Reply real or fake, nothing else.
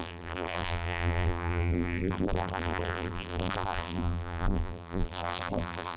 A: fake